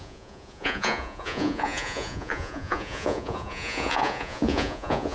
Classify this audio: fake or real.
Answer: fake